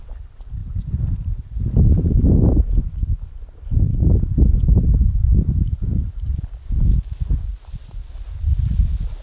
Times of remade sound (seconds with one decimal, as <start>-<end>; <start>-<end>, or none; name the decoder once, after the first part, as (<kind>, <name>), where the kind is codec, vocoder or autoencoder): none